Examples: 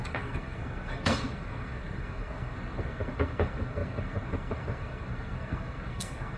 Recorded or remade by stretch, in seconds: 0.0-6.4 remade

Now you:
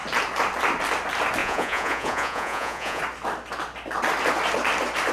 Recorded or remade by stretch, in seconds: 0.0-1.4 recorded; 1.4-3.0 remade; 3.0-5.1 recorded

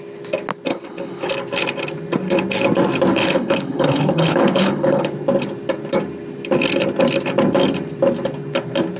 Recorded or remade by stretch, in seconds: 0.0-0.7 recorded; 0.7-1.3 remade; 1.3-3.1 recorded; 3.1-5.1 remade; 5.1-9.0 recorded

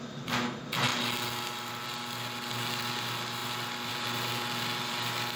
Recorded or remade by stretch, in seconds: 0.0-5.4 recorded